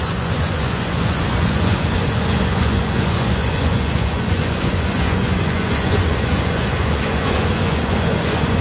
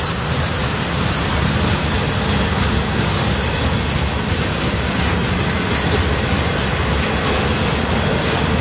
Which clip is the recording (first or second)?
second